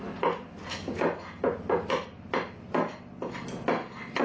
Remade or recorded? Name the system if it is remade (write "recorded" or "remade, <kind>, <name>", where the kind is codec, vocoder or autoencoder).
recorded